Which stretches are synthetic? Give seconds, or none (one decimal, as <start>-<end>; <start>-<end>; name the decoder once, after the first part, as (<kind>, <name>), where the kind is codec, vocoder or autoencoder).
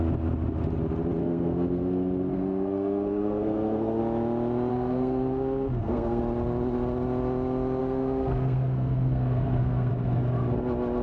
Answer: 1.2-4.0 (codec, SNAC); 4.7-6.2; 7.8-9.9